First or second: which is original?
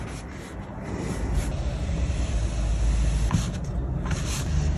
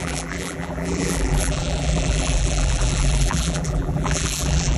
first